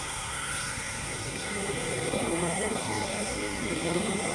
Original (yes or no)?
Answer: no